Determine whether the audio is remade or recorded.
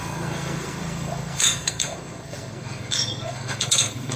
remade